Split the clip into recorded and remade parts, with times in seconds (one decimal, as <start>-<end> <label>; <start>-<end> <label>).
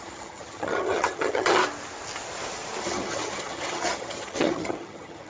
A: 0.0-1.6 remade; 1.6-2.8 recorded; 2.8-5.3 remade